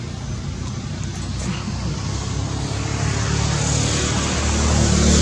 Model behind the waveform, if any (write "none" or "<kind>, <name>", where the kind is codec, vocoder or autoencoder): none